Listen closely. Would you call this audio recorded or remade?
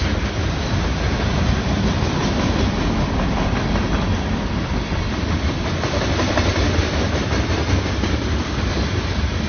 recorded